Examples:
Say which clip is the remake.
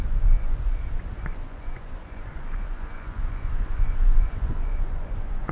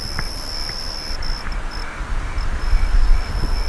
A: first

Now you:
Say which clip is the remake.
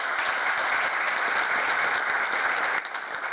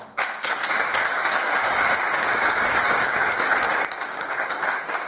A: second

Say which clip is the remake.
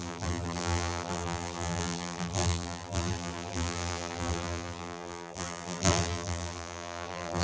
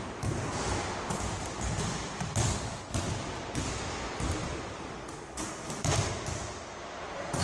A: first